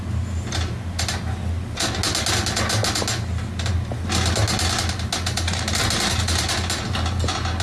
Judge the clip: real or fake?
real